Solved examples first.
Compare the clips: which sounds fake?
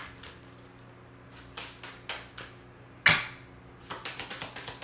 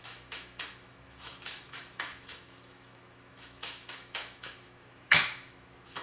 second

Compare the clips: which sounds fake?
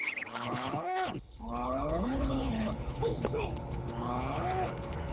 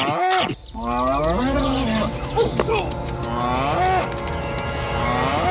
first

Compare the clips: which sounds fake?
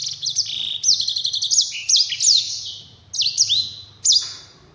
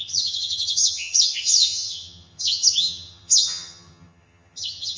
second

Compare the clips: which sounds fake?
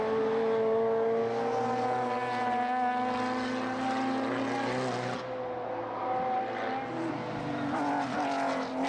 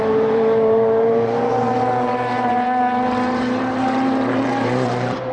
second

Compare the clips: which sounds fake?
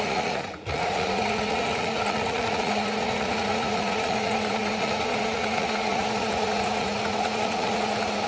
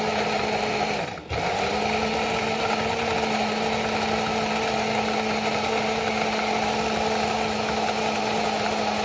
first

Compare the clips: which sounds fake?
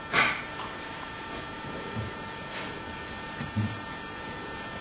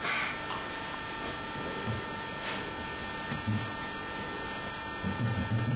first